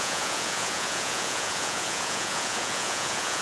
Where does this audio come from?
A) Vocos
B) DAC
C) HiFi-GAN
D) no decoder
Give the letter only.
A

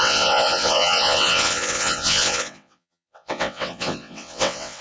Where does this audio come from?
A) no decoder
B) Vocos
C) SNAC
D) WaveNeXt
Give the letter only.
D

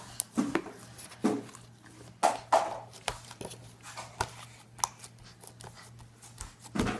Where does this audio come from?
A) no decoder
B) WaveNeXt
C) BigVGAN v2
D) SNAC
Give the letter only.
A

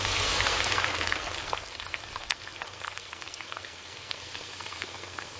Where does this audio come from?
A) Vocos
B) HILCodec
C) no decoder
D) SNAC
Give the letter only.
D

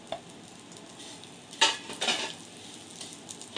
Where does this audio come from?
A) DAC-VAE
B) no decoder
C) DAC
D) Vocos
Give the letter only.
B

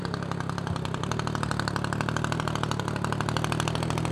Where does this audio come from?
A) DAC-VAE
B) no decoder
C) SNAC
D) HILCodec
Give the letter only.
B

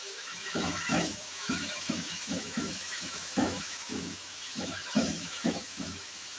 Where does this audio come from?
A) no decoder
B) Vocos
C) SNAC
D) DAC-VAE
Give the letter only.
D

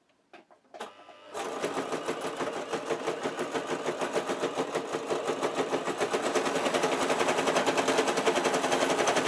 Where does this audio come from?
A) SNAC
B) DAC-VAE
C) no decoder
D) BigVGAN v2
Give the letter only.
C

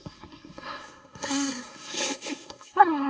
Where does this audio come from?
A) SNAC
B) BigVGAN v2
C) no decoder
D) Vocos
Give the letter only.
A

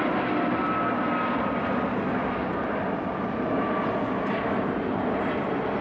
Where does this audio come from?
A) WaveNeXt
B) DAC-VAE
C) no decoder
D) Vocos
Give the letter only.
C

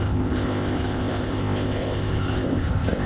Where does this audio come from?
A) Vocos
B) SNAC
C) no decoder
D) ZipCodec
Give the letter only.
D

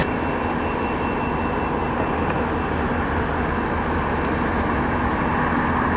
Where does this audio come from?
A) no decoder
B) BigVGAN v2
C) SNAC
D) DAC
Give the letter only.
A